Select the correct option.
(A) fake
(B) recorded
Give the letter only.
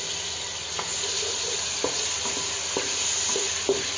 B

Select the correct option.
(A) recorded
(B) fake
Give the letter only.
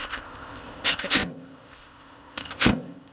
B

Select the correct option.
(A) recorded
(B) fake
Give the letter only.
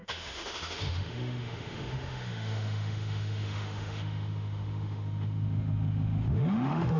B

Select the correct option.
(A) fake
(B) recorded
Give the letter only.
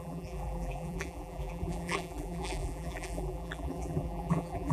A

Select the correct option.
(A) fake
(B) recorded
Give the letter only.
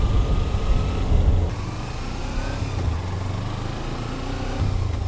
B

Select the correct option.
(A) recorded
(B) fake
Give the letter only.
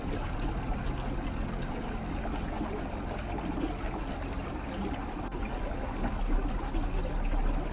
A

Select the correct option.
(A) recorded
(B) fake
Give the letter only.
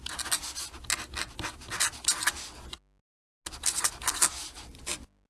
A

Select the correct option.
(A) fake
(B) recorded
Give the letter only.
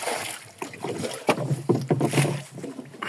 B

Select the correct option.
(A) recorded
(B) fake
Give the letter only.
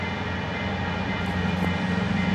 A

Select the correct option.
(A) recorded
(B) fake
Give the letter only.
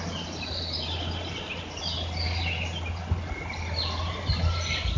A